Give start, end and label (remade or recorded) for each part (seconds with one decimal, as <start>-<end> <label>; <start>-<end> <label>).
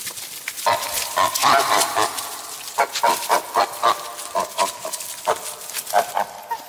0.0-6.7 recorded